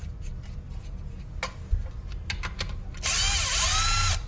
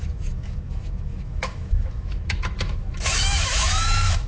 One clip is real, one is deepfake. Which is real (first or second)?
first